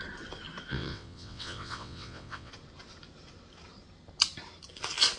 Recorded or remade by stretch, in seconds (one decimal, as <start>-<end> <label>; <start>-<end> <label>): 0.0-0.7 recorded; 0.7-2.5 remade; 2.5-5.2 recorded